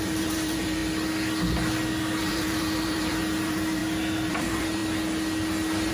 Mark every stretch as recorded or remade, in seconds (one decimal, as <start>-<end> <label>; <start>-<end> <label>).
0.0-0.8 remade; 0.8-2.2 recorded; 2.2-3.8 remade; 3.8-4.3 recorded; 4.3-4.8 remade; 4.8-5.9 recorded